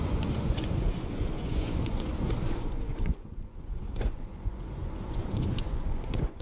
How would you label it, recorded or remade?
remade